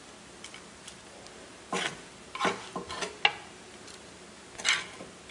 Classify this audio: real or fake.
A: real